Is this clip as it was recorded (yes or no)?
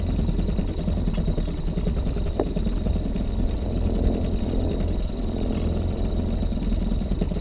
yes